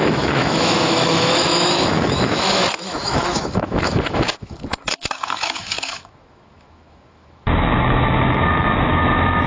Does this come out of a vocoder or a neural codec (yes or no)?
yes